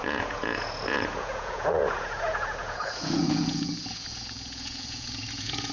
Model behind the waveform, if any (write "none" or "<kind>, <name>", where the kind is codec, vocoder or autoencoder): vocoder, Vocos